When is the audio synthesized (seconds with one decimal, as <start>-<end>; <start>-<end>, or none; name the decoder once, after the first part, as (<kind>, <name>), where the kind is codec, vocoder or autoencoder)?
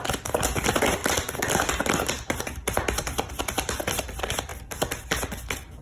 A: 0.0-1.0 (vocoder, BigVGAN v2); 2.4-4.5